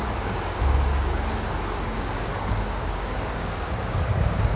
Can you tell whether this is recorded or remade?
remade